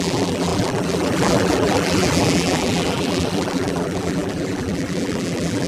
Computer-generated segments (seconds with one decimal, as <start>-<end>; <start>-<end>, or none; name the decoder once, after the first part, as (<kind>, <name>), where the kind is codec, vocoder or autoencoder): 0.0-5.7 (vocoder, BigVGAN v2)